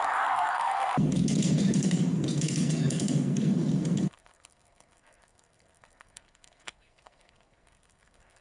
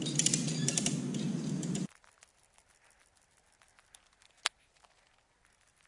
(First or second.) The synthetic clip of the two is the first